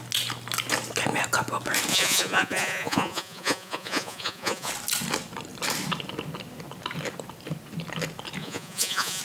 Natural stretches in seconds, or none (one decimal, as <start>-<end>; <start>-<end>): 0.0-1.9; 4.7-8.4